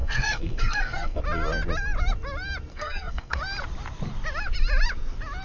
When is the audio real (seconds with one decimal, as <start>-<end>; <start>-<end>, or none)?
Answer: 1.2-2.7; 3.4-5.4